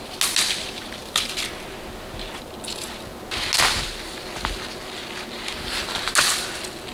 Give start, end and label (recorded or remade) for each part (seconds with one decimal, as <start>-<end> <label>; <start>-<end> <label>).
0.0-6.9 recorded